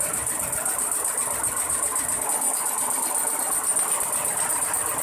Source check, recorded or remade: recorded